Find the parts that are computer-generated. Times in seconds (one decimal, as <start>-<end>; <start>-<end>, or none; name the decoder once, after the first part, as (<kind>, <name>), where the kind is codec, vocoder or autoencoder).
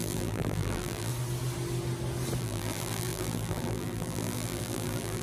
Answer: 0.0-1.1 (vocoder, BigVGAN v2); 2.4-5.2